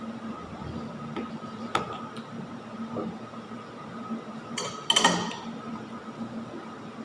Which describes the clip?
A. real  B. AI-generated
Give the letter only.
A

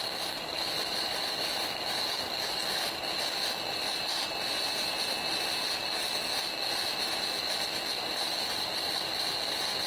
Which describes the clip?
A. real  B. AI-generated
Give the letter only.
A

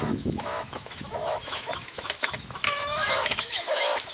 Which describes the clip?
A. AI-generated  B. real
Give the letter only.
A